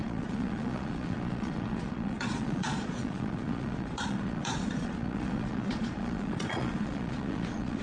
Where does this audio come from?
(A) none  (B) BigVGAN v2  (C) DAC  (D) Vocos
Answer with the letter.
D